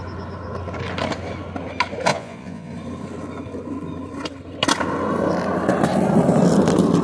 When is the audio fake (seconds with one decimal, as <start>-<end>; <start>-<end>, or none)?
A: 2.1-2.7